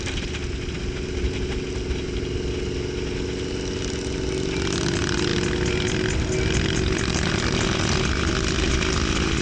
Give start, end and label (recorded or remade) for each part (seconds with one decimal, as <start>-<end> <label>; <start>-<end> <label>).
0.0-9.4 recorded